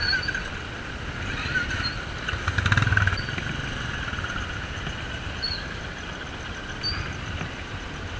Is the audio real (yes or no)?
yes